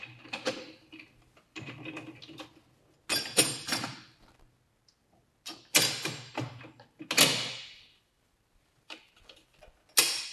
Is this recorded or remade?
recorded